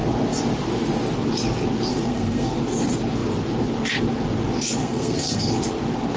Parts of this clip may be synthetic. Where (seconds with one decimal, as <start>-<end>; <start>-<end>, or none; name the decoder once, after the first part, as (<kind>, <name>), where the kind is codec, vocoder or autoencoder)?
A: 1.9-2.6 (codec, SNAC); 4.8-5.5

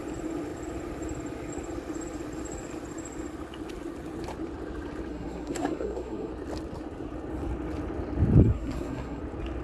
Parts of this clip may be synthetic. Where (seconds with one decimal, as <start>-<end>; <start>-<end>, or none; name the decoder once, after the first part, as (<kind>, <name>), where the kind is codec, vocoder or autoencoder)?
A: 5.1-6.3 (codec, SNAC); 8.4-9.2

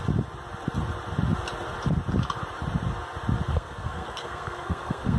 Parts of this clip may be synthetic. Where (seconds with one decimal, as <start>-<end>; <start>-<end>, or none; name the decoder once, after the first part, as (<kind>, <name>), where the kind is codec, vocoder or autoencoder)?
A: 3.5-5.2 (codec, SNAC)

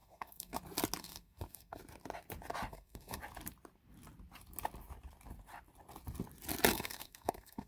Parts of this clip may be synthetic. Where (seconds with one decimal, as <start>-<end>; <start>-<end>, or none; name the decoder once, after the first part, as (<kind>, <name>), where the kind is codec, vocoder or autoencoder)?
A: 0.0-0.6 (codec, SNAC); 1.0-1.8; 2.7-3.2; 6.7-7.7